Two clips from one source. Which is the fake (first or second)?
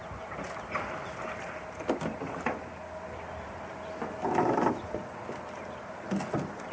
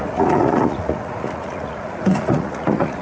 second